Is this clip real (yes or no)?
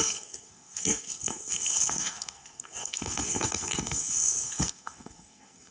no